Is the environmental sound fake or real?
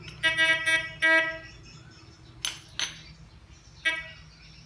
real